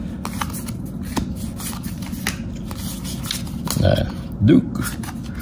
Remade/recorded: recorded